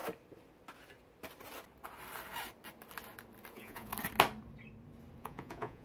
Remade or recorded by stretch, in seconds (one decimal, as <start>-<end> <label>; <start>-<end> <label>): 0.0-3.5 recorded; 3.5-3.9 remade; 3.9-5.2 recorded; 5.2-5.8 remade